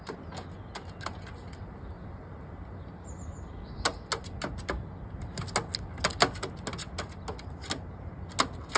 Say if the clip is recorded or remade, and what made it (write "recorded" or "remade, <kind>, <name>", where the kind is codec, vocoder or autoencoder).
recorded